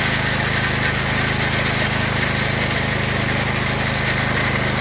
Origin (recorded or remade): recorded